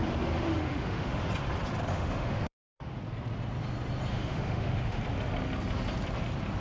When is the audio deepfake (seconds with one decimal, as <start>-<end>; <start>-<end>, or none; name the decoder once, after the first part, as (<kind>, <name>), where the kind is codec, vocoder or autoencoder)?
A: 0.5-1.2 (autoencoder, DAC-VAE); 1.9-3.0; 4.1-5.0